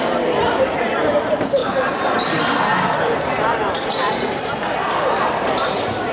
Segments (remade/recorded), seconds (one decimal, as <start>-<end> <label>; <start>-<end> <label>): 0.0-6.1 remade